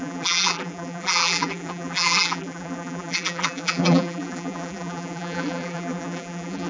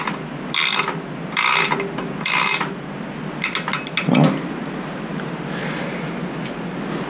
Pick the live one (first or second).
second